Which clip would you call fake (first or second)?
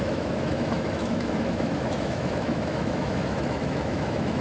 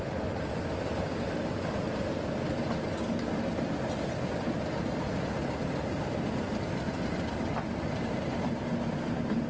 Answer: first